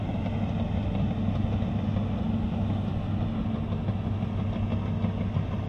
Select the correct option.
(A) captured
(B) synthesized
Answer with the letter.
A